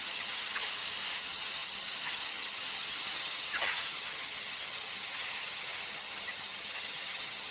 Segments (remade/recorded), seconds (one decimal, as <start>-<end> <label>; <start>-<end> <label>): 0.0-0.6 remade; 0.6-1.2 recorded; 1.2-7.5 remade